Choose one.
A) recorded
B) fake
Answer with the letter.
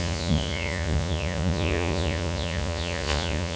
B